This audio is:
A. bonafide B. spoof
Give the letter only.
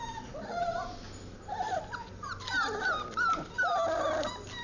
A